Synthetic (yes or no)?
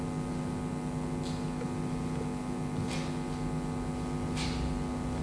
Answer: no